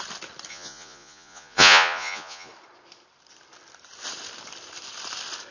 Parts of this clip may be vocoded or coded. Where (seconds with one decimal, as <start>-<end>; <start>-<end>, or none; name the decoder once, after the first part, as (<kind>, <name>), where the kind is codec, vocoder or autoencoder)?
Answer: 0.5-2.5 (vocoder, Vocos)